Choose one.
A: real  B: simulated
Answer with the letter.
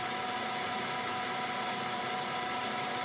B